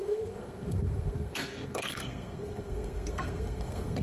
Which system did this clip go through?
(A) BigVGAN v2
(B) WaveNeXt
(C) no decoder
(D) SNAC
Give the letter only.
D